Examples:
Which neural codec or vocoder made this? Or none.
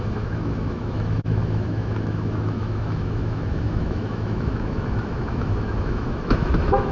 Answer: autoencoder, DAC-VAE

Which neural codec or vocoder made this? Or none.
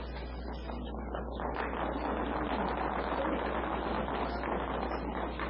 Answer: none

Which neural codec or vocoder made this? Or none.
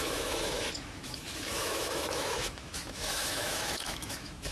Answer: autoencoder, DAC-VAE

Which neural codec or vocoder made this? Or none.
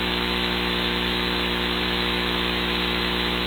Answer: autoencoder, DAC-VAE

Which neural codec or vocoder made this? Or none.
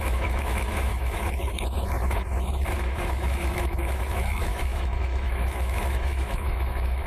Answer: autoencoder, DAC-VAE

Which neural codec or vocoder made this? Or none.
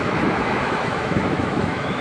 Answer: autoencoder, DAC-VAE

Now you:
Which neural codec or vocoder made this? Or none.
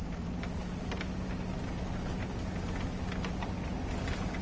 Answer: none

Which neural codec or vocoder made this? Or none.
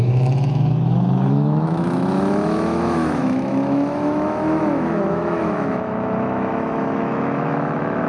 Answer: autoencoder, DAC-VAE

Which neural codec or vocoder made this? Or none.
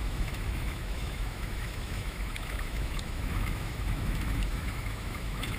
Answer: autoencoder, DAC-VAE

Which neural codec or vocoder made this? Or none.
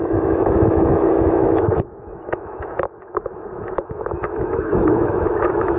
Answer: autoencoder, DAC-VAE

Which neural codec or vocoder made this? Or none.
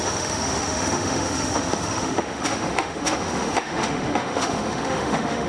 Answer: autoencoder, DAC-VAE